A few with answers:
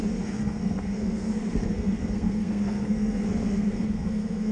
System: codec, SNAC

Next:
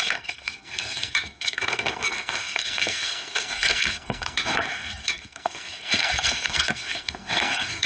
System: codec, SNAC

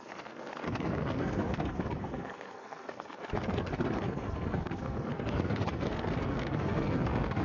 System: codec, SNAC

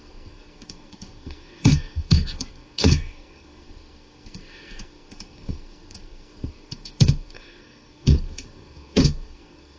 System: codec, SNAC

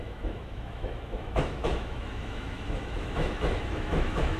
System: autoencoder, DAC-VAE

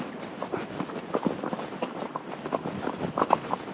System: none